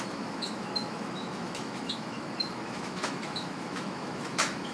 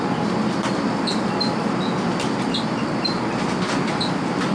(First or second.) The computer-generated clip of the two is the first